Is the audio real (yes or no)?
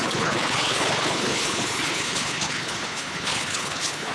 no